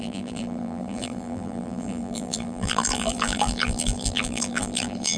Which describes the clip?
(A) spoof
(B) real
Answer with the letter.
A